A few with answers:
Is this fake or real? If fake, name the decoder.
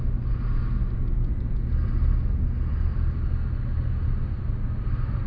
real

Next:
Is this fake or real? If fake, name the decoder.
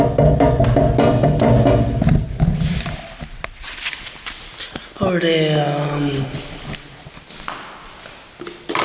real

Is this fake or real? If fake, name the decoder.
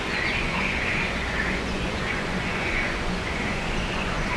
fake, vocoder, Vocos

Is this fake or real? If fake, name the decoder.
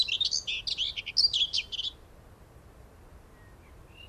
real